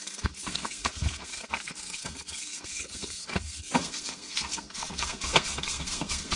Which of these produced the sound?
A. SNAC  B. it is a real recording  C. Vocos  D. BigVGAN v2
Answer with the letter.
A